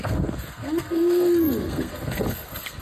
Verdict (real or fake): fake